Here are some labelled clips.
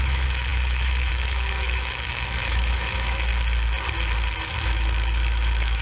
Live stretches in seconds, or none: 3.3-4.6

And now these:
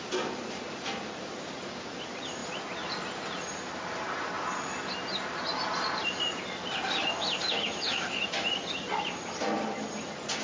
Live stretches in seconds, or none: 0.0-10.4

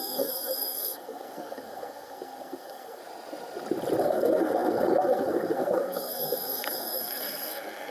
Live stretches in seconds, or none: 3.0-4.0

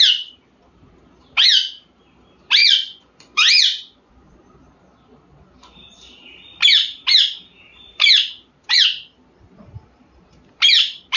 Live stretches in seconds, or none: 0.0-2.6; 4.1-11.2

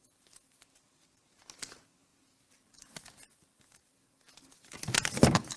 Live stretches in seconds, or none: 0.0-5.6

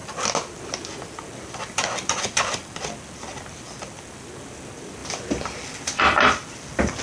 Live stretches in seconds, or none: 0.0-1.0

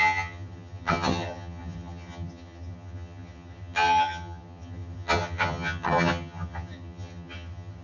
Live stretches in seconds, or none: none

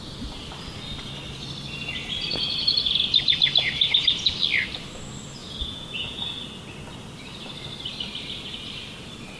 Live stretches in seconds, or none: 0.0-5.4; 6.2-9.4